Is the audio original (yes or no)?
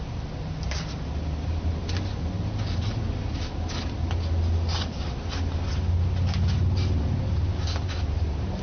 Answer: yes